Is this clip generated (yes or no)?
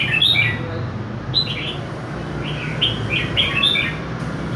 no